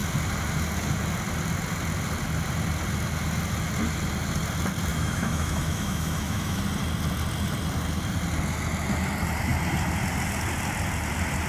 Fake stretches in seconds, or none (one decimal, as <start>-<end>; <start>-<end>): 4.9-6.6